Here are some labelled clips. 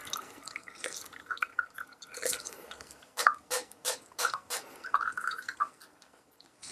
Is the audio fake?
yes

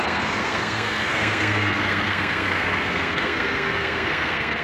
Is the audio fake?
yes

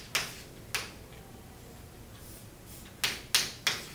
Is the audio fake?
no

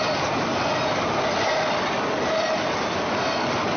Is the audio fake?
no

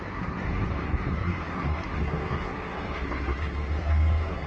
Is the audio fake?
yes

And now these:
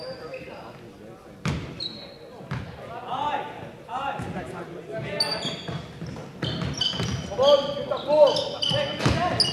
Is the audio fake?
no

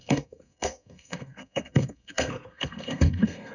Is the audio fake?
yes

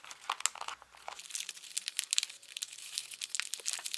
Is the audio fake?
no